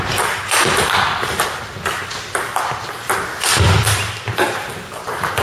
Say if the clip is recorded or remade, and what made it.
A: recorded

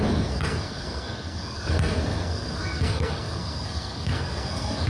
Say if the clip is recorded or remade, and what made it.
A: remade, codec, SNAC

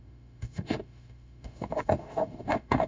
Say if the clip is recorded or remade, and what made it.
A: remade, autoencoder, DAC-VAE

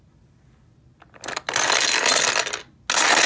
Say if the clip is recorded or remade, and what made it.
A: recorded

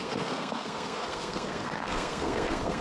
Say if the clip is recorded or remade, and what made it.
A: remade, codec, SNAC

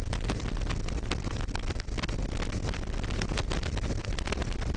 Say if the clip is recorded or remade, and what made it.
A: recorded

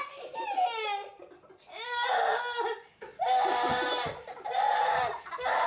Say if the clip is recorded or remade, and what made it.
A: recorded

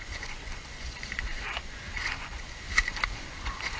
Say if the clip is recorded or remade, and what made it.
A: remade, vocoder, Vocos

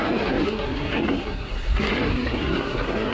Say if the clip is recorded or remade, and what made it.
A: remade, codec, SNAC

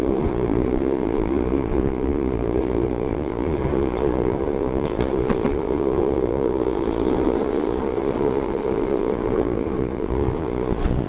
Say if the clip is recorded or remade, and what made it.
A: remade, vocoder, Vocos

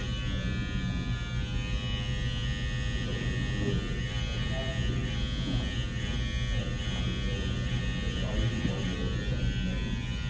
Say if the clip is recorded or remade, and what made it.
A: recorded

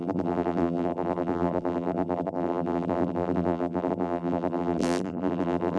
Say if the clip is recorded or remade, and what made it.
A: remade, vocoder, BigVGAN v2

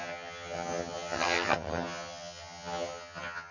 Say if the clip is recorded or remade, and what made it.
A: remade, vocoder, HiFi-GAN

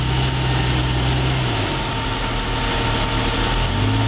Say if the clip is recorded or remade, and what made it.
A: recorded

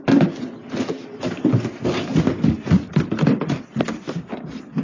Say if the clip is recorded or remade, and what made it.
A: recorded